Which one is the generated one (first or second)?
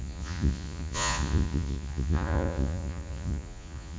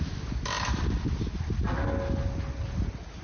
first